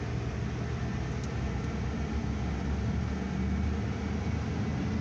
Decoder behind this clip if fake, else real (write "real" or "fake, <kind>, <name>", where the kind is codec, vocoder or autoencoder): real